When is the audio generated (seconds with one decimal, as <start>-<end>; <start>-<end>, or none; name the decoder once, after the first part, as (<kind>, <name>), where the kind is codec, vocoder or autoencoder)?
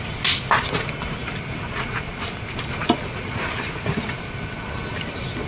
none